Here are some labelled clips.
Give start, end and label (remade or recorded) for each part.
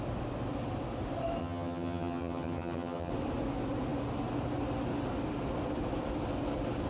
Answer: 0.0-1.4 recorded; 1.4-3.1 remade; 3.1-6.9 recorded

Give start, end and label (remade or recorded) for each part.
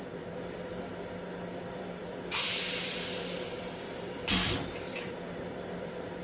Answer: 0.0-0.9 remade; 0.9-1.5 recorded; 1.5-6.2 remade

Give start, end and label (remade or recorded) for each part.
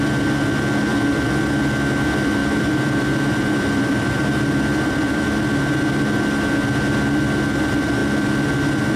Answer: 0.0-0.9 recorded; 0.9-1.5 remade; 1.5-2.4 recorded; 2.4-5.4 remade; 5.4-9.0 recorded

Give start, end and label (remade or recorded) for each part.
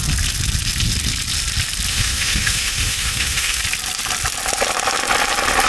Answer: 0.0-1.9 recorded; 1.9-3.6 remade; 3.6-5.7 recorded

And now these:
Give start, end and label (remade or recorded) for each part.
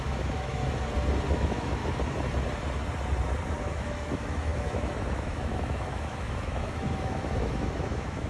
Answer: 0.0-0.6 remade; 0.6-1.3 recorded; 1.3-1.8 remade; 1.8-3.6 recorded; 3.6-8.3 remade